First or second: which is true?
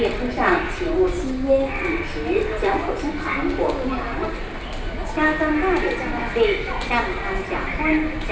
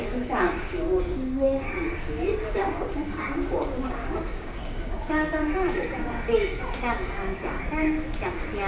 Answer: first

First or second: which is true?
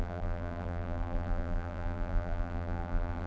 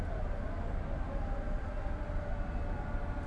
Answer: second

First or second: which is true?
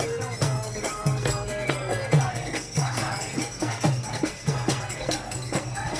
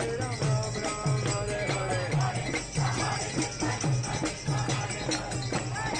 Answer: second